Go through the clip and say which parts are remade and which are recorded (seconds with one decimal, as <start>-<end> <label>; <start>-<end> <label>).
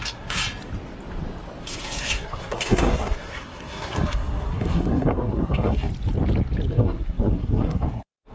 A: 0.0-0.4 remade; 0.4-1.6 recorded; 1.6-5.9 remade; 5.9-6.7 recorded; 6.7-8.3 remade